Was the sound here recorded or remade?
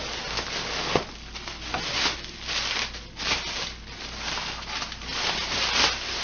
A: recorded